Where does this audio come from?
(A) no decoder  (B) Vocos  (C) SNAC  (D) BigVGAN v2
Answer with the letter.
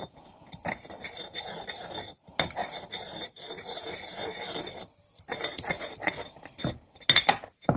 A